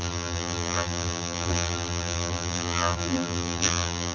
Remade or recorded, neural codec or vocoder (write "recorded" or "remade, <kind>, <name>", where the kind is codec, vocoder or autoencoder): remade, vocoder, BigVGAN v2